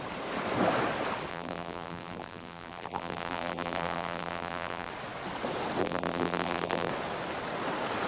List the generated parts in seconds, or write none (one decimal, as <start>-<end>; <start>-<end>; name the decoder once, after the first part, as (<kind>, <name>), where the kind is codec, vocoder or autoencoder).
1.3-4.9 (vocoder, BigVGAN v2); 5.8-6.9